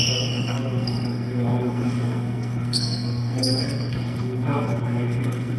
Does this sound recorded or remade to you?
remade